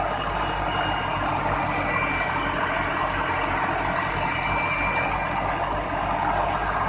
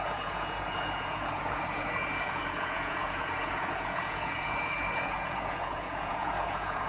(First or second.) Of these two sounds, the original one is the first